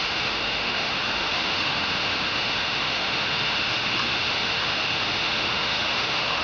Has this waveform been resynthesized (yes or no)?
yes